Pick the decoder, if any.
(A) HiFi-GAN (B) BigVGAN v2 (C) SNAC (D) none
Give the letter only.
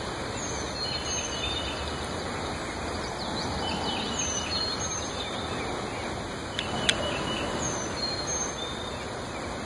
D